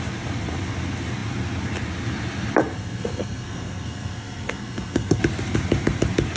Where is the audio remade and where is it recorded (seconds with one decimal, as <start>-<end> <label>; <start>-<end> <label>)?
0.0-2.6 recorded; 2.6-5.2 remade; 5.2-6.4 recorded